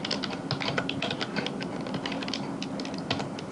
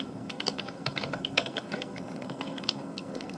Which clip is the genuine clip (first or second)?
first